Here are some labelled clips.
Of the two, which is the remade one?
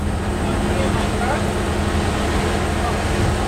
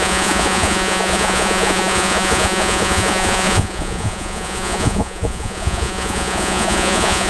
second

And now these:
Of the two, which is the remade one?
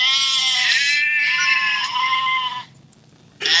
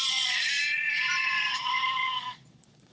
second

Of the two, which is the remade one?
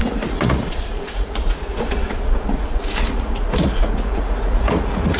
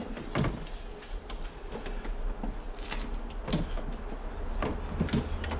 first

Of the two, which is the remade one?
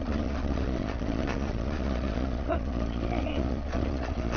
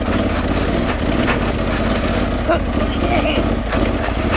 first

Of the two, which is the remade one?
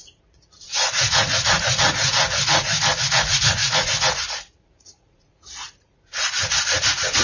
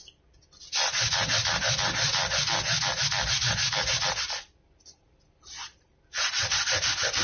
first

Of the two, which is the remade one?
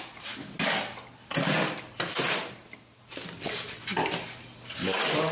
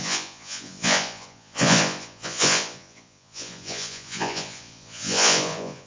second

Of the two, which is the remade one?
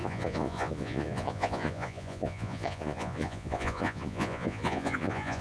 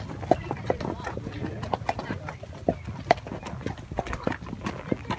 first